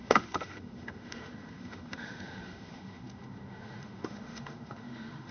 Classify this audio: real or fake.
fake